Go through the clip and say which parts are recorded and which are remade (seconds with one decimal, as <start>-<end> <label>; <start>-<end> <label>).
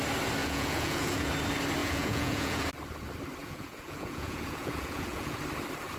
0.0-0.4 recorded; 0.4-1.3 remade; 1.3-1.8 recorded; 1.8-2.7 remade; 2.7-3.4 recorded; 3.4-5.4 remade; 5.4-6.0 recorded